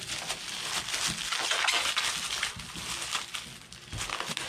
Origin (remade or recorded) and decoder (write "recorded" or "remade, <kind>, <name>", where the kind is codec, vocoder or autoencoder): recorded